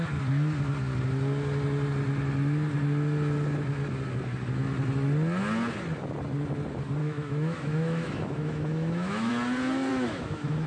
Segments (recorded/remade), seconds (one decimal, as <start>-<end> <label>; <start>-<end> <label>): 0.0-7.0 recorded; 7.0-9.3 remade; 9.3-9.9 recorded; 9.9-10.7 remade